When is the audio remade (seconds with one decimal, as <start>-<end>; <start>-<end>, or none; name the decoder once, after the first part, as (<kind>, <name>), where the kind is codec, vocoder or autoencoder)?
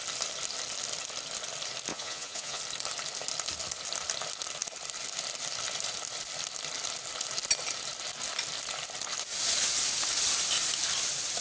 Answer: 1.9-2.6 (vocoder, Vocos)